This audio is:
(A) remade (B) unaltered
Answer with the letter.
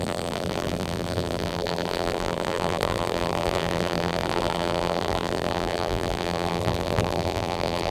A